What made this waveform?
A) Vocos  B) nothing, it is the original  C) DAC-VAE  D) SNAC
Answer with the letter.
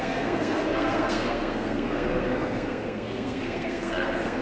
D